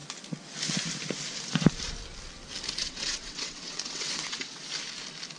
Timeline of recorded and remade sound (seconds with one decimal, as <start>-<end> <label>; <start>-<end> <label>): 0.0-2.8 recorded; 2.8-4.6 remade; 4.6-5.4 recorded